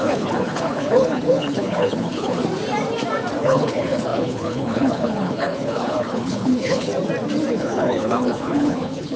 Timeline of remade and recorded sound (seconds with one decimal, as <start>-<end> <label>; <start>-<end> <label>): 0.0-2.4 remade; 2.4-3.4 recorded; 3.4-6.9 remade; 6.9-7.5 recorded; 7.5-9.2 remade